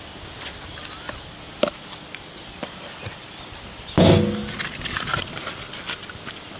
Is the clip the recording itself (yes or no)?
yes